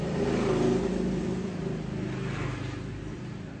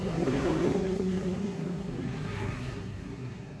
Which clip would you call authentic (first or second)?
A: first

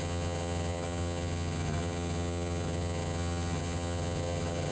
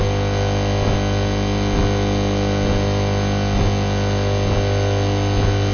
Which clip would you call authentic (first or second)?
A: second